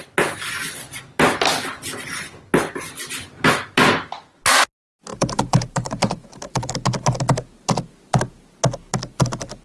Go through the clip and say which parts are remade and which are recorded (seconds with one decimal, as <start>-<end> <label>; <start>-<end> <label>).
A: 0.0-5.1 recorded; 5.1-6.7 remade; 6.7-9.6 recorded